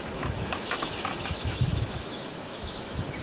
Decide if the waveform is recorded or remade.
remade